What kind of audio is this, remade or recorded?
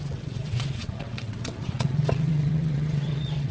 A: remade